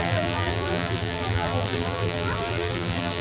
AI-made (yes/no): yes